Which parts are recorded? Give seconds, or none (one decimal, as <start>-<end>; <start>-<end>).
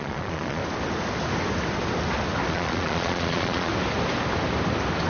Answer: 0.6-2.5; 3.7-5.1